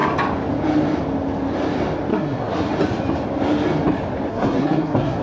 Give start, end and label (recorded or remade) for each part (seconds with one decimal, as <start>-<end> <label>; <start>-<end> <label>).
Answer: 0.0-2.1 recorded; 2.1-2.7 remade; 2.7-4.3 recorded; 4.3-5.2 remade